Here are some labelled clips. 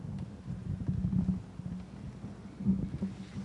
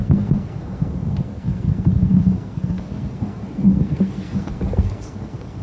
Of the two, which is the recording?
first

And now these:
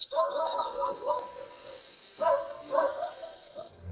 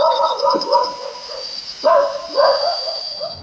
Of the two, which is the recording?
second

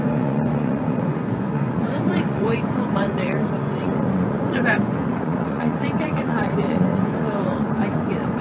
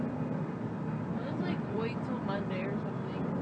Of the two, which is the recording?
second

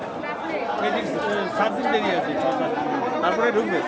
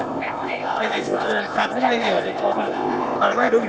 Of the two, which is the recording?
first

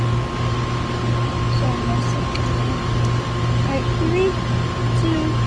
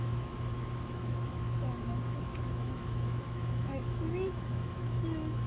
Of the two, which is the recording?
first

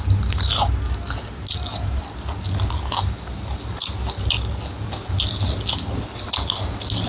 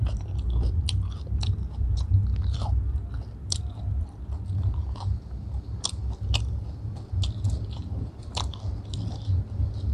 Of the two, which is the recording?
first